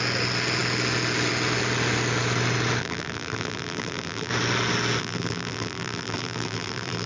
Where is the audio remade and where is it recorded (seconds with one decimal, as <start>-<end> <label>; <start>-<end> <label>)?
0.0-2.8 recorded; 2.8-4.3 remade; 4.3-5.0 recorded; 5.0-7.1 remade